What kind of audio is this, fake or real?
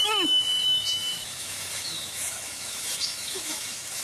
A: fake